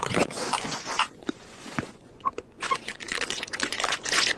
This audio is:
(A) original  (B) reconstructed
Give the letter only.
B